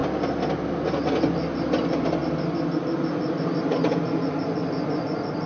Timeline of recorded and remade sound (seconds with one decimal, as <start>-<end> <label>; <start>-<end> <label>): 0.0-5.5 recorded